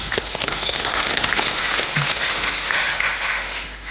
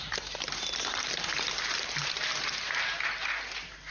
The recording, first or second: second